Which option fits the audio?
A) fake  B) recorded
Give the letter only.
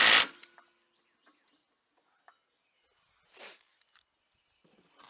B